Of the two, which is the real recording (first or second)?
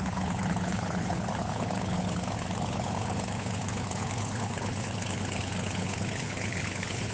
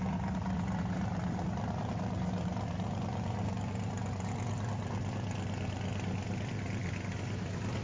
second